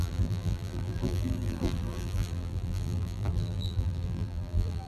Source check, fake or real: fake